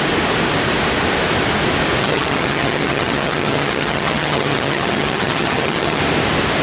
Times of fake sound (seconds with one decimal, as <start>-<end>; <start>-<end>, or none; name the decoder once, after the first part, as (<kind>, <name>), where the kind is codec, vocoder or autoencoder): 2.0-6.0 (vocoder, HiFi-GAN)